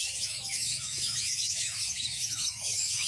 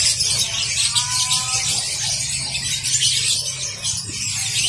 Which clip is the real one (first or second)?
second